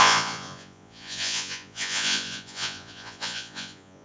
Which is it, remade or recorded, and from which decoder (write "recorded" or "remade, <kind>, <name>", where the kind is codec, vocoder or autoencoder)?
remade, vocoder, Vocos